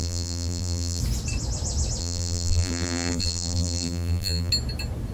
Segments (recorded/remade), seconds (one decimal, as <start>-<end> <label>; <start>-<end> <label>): 0.0-1.0 remade; 1.0-2.0 recorded; 2.0-4.5 remade; 4.5-5.1 recorded